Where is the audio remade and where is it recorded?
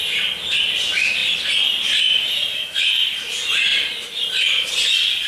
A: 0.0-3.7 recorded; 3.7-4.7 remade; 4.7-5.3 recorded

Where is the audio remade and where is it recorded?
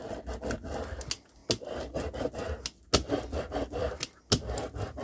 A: 0.0-5.0 recorded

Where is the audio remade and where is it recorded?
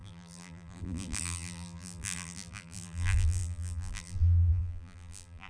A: 0.0-5.5 remade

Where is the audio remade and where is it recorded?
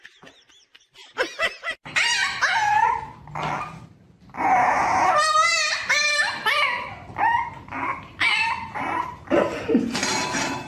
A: 0.0-7.9 recorded; 7.9-9.2 remade; 9.2-10.0 recorded; 10.0-10.7 remade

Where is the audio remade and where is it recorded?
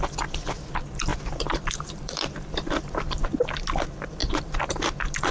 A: 0.0-1.1 recorded; 1.1-3.0 remade; 3.0-4.2 recorded; 4.2-5.3 remade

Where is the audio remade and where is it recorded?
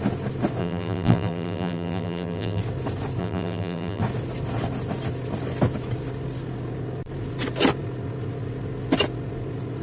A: 0.0-0.6 recorded; 0.6-2.6 remade; 2.6-3.2 recorded; 3.2-4.0 remade; 4.0-9.8 recorded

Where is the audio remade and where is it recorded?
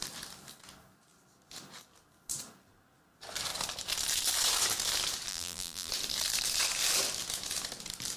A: 0.0-5.3 recorded; 5.3-5.9 remade; 5.9-8.2 recorded